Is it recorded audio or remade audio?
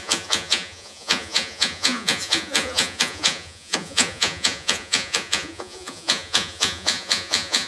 remade